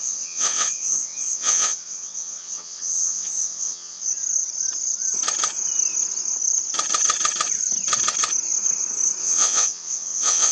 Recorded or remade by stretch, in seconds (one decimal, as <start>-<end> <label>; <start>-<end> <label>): 0.0-4.0 remade; 4.0-9.2 recorded; 9.2-10.5 remade

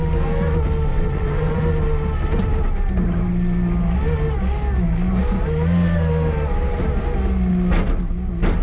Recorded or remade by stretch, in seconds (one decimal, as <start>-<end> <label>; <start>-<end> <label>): 0.0-0.9 recorded; 0.9-1.6 remade; 1.6-8.6 recorded